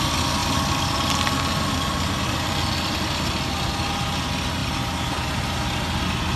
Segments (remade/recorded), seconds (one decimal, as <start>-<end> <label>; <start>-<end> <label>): 0.0-6.4 recorded